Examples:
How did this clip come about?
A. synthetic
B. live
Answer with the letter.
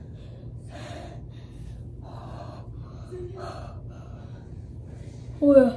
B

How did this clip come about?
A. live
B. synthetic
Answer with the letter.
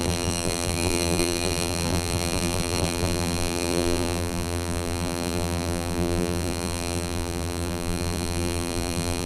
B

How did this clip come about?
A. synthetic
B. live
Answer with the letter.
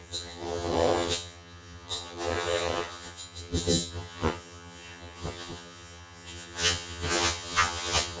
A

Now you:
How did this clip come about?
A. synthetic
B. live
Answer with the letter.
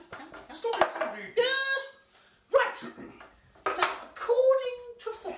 B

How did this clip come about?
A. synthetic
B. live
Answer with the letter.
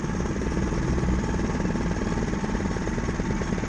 A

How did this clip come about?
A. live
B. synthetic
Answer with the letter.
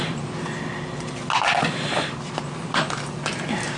A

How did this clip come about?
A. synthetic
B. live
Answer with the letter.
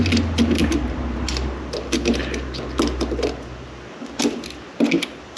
B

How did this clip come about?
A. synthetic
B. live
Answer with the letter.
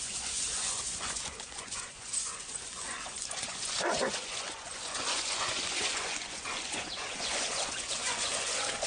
A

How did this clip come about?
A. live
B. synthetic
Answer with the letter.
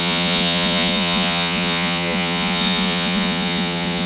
B